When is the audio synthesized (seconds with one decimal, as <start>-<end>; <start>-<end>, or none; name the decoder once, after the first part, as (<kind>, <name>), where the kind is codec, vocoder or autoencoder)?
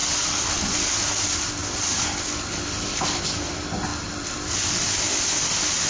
3.9-4.9 (vocoder, BigVGAN v2)